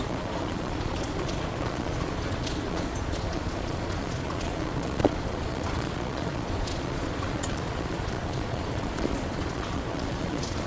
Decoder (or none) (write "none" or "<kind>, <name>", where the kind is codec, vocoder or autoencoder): vocoder, Vocos